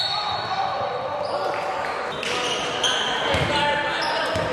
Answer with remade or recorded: recorded